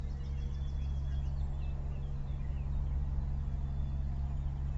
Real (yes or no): yes